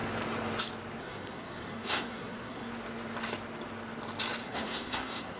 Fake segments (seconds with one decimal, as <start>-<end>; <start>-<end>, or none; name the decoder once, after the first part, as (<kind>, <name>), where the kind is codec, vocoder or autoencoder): 1.0-2.7 (codec, SNAC); 4.4-5.4